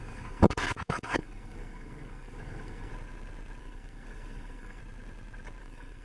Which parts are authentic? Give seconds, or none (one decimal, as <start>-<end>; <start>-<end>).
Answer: 2.9-3.6; 4.8-5.6